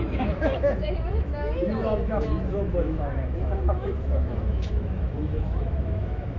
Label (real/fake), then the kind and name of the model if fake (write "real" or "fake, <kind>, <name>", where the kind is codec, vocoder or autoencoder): fake, autoencoder, DAC-VAE